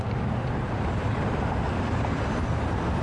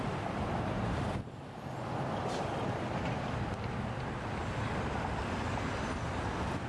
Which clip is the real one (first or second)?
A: second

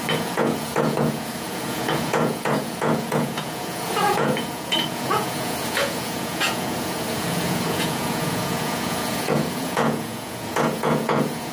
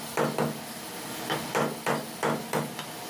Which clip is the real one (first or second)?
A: second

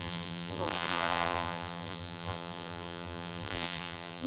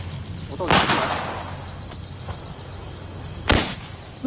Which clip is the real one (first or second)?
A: second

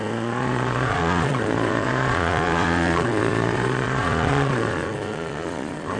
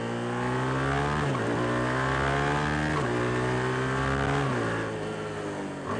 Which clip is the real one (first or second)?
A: second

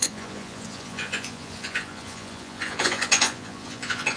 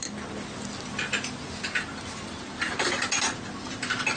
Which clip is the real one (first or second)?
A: second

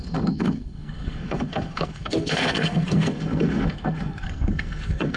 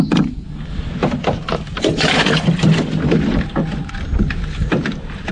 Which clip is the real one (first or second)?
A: second